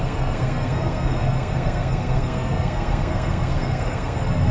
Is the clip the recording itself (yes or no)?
no